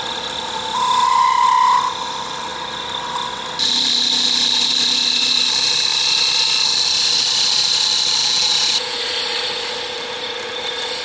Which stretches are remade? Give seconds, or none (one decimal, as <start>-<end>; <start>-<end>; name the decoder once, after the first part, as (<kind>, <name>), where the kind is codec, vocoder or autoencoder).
8.2-9.0 (vocoder, Vocos)